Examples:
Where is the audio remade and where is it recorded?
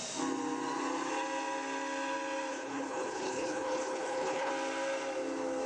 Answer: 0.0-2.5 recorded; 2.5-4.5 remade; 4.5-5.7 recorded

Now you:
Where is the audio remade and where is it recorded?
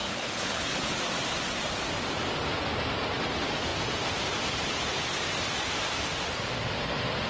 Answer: 0.0-1.0 remade; 1.0-7.3 recorded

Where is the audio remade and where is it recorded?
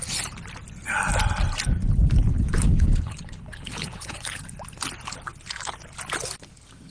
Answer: 0.0-2.3 recorded; 2.3-4.4 remade; 4.4-6.9 recorded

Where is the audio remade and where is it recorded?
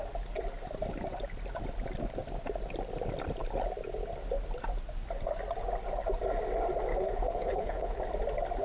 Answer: 0.0-6.9 recorded; 6.9-8.0 remade; 8.0-8.6 recorded